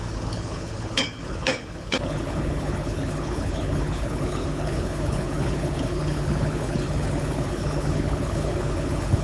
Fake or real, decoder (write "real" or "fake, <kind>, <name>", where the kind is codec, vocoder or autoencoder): fake, codec, HILCodec